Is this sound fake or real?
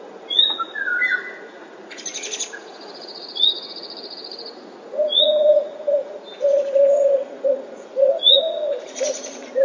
fake